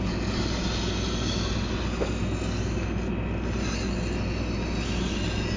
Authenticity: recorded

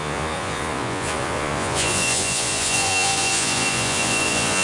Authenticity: remade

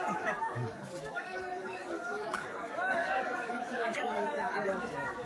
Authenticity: remade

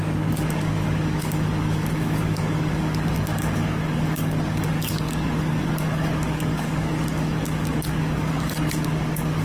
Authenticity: remade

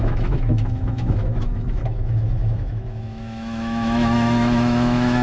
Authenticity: remade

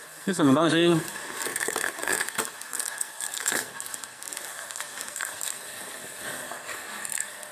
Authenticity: remade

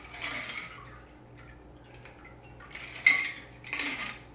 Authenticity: recorded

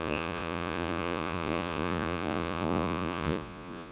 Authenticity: remade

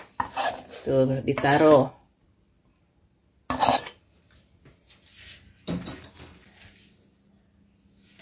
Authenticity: recorded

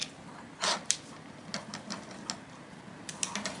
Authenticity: recorded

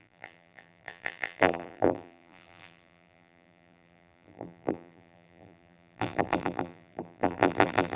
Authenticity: remade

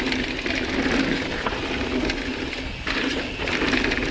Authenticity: recorded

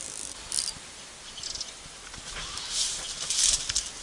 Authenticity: recorded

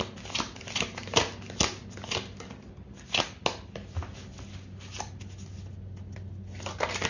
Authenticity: recorded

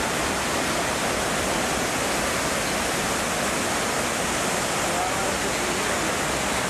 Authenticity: recorded